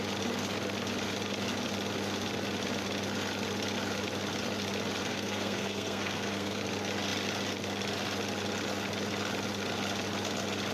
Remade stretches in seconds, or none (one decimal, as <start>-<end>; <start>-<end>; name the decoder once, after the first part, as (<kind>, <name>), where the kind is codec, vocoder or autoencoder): 5.0-6.6 (codec, SNAC)